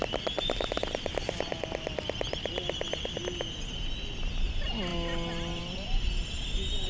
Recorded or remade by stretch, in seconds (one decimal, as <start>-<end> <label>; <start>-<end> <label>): 0.0-2.0 remade; 2.0-6.9 recorded